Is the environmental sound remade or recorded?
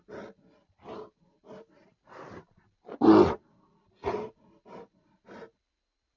recorded